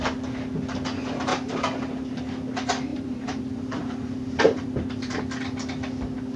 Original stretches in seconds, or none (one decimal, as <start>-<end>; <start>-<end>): 0.0-1.3; 2.2-2.9; 5.2-6.4